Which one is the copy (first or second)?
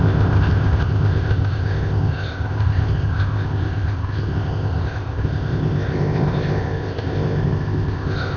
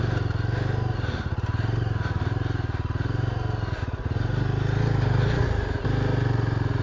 first